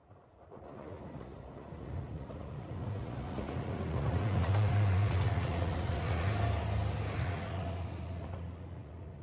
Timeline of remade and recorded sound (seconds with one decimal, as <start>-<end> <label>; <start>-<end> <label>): 0.0-6.3 remade; 6.3-7.2 recorded; 7.2-9.2 remade